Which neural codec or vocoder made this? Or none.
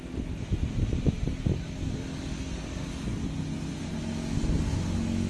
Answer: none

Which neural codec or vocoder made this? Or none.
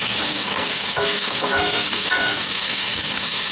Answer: codec, SNAC